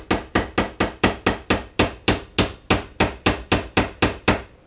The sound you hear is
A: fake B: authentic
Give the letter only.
B